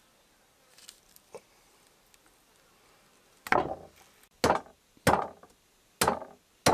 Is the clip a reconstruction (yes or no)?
no